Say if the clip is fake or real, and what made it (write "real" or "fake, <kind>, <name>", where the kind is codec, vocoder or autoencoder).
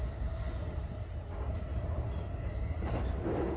real